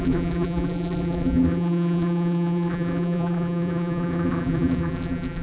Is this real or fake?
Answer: fake